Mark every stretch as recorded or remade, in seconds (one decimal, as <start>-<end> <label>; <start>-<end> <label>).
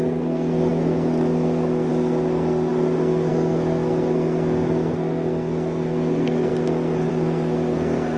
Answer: 0.0-8.2 remade